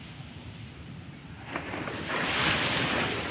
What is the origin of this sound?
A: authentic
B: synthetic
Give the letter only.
A